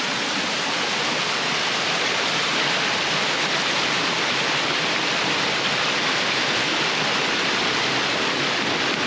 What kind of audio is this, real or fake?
real